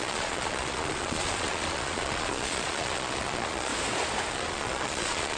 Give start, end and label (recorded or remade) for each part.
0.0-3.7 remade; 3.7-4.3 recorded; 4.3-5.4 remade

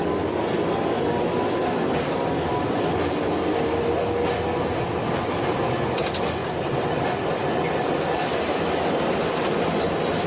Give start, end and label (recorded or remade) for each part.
0.0-10.3 recorded

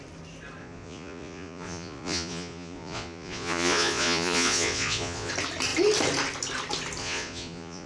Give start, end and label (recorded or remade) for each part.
0.0-0.6 recorded; 0.6-5.3 remade; 5.3-7.0 recorded; 7.0-7.9 remade

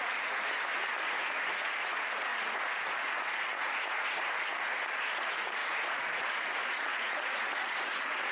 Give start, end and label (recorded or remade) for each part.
0.0-0.4 remade; 0.4-1.0 recorded; 1.0-8.3 remade

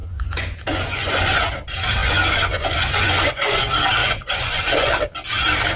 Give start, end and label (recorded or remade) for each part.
0.0-1.4 remade; 1.4-2.0 recorded; 2.0-3.6 remade; 3.6-4.0 recorded; 4.0-5.0 remade; 5.0-5.8 recorded

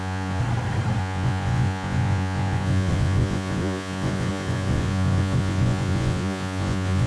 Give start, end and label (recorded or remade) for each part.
0.0-0.4 remade; 0.4-1.0 recorded; 1.0-7.1 remade

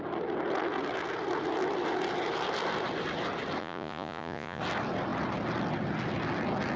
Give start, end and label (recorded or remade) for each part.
0.0-3.6 recorded; 3.6-4.6 remade; 4.6-6.8 recorded

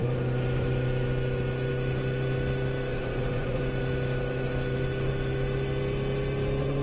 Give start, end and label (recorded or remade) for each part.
0.0-2.9 recorded; 2.9-3.6 remade; 3.6-6.8 recorded